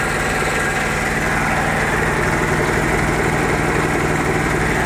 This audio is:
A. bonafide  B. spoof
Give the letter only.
A